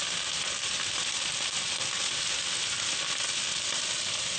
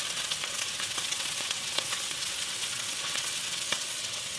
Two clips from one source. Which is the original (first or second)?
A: first